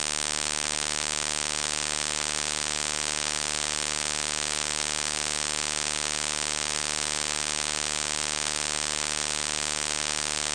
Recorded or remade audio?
recorded